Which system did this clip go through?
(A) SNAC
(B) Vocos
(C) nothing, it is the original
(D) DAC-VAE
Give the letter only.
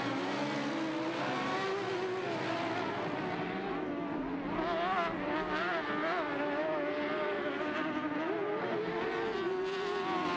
C